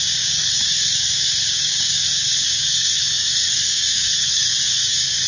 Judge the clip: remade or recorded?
remade